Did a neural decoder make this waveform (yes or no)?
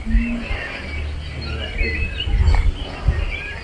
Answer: no